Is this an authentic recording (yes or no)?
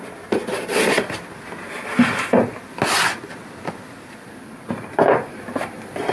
yes